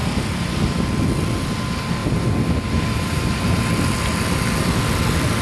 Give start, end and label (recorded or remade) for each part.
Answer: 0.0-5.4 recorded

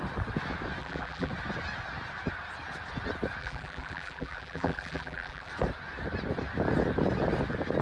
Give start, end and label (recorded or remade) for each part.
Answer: 0.0-0.8 recorded; 0.8-1.3 remade; 1.3-3.4 recorded; 3.4-5.5 remade; 5.5-7.8 recorded